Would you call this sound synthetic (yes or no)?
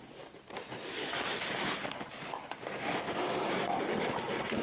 no